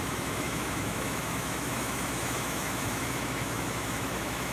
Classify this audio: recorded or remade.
remade